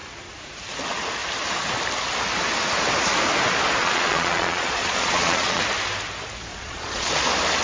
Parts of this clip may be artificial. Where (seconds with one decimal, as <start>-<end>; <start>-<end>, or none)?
3.8-5.6; 6.5-7.1